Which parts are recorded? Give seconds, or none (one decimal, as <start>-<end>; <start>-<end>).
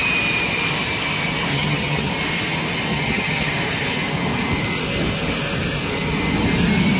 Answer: 0.0-1.5; 2.1-2.9; 3.5-7.0